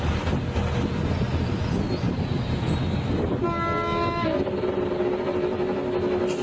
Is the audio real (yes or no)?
yes